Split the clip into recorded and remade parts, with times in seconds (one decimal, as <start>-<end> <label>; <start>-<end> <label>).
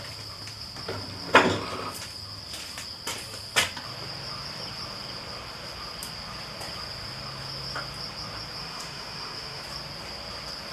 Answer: 0.0-8.6 recorded; 8.6-9.6 remade; 9.6-10.7 recorded